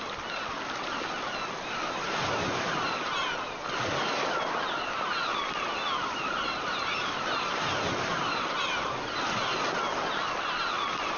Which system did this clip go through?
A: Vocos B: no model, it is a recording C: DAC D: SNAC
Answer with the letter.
B